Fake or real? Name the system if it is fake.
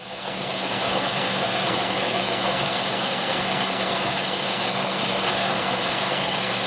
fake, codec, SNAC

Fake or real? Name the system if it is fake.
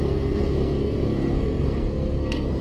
fake, codec, SNAC